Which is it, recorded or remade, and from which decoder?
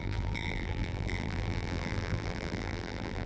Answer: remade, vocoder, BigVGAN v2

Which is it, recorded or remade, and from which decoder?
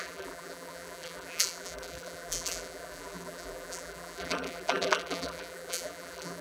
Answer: remade, vocoder, BigVGAN v2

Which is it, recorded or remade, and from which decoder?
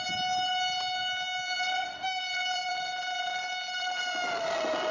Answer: recorded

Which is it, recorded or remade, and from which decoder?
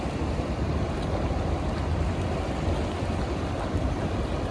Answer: remade, vocoder, BigVGAN v2